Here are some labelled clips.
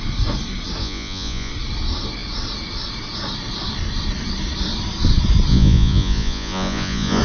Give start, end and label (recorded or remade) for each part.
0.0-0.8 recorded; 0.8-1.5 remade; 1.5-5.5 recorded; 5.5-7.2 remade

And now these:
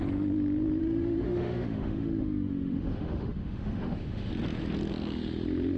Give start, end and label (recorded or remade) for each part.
0.0-0.8 recorded; 0.8-4.3 remade; 4.3-5.8 recorded

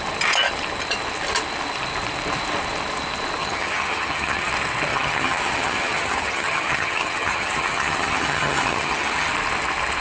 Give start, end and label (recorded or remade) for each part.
0.0-3.4 recorded; 3.4-4.5 remade; 4.5-4.9 recorded; 4.9-9.3 remade; 9.3-10.0 recorded

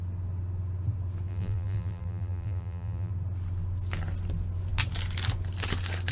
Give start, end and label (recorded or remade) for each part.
0.0-1.3 recorded; 1.3-3.1 remade; 3.1-6.1 recorded

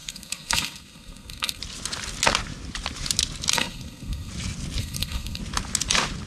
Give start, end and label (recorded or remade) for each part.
0.0-1.6 remade; 1.6-3.5 recorded; 3.5-4.3 remade; 4.3-4.8 recorded; 4.8-5.4 remade; 5.4-6.3 recorded

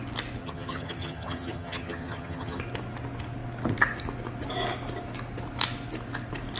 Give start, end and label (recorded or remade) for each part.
0.0-0.4 recorded; 0.4-2.6 remade; 2.6-6.6 recorded

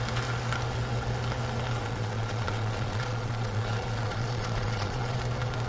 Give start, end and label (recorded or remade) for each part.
0.0-1.8 recorded; 1.8-5.2 remade; 5.2-5.7 recorded